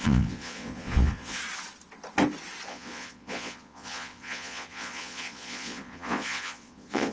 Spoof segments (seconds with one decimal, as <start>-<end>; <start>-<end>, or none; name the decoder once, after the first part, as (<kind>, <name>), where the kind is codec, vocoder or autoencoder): 0.0-1.4 (vocoder, Vocos); 2.7-7.1